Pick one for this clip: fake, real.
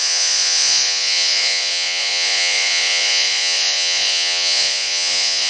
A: fake